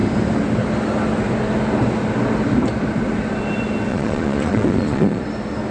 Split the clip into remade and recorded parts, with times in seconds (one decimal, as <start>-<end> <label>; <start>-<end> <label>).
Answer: 0.0-3.9 recorded; 3.9-5.2 remade; 5.2-5.7 recorded